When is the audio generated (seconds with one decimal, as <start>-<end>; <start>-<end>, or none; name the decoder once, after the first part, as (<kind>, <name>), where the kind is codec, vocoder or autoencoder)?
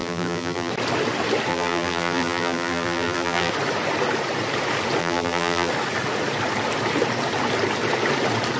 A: 0.0-0.7 (vocoder, BigVGAN v2); 1.5-3.5; 5.0-5.7